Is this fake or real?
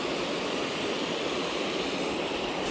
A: real